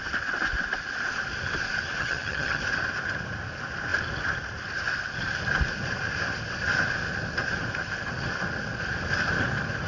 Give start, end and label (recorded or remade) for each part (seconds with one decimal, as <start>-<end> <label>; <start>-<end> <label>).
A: 0.0-2.0 recorded; 2.0-2.6 remade; 2.6-9.9 recorded